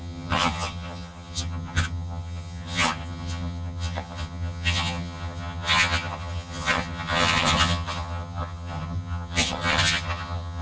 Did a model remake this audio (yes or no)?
yes